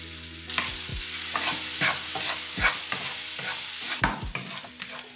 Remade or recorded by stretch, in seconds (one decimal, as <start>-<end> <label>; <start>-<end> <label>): 0.0-5.2 recorded